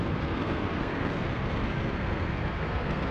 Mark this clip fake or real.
fake